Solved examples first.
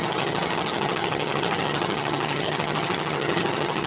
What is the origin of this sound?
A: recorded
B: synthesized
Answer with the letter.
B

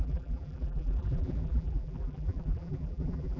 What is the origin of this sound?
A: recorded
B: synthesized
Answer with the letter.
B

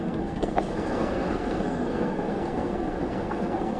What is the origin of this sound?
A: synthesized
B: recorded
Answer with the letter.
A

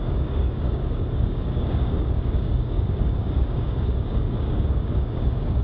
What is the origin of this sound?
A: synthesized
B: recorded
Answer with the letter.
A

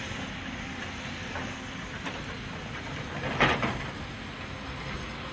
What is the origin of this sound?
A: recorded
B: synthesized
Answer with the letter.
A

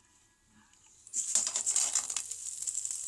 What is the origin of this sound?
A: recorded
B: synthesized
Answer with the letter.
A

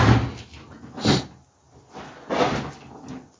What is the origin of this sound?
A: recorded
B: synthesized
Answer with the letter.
A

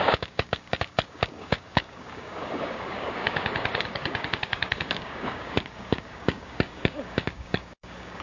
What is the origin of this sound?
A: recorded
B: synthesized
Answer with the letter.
B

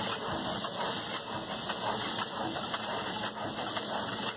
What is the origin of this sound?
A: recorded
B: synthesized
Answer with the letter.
A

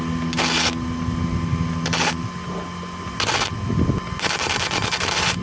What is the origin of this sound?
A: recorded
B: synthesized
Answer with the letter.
A